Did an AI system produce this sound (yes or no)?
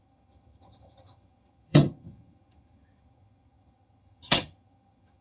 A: yes